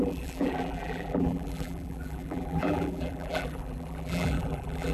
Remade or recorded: remade